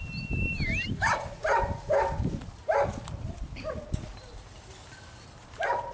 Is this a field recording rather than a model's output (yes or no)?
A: yes